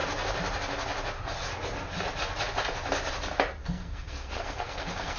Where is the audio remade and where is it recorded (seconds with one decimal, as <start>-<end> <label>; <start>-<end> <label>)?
0.0-3.6 recorded; 3.6-5.2 remade